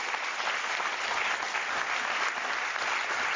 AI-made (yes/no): no